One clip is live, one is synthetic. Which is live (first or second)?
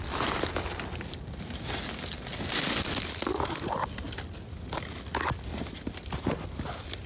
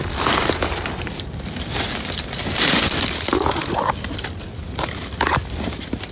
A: first